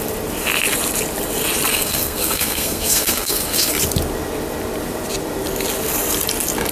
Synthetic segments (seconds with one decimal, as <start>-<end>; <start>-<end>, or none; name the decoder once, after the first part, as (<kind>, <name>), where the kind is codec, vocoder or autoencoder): 1.7-3.7 (codec, SNAC)